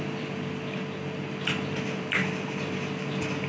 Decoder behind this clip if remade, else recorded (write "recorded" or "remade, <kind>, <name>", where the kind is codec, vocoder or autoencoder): recorded